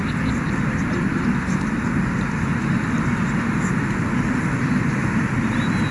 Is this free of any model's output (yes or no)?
yes